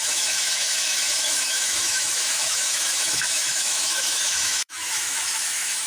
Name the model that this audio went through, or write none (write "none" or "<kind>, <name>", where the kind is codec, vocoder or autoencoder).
autoencoder, DAC-VAE